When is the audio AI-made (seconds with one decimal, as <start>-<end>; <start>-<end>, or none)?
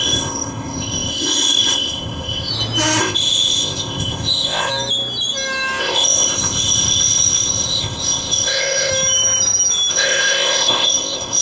0.0-2.5; 3.0-4.7; 5.8-8.9; 9.9-11.4